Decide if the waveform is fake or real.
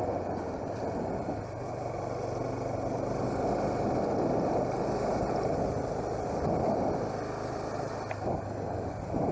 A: real